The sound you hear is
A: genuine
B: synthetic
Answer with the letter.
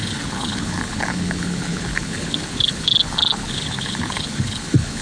B